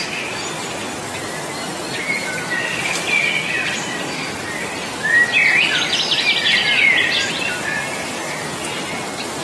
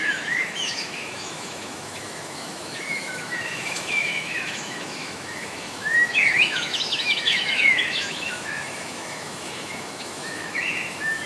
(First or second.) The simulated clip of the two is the second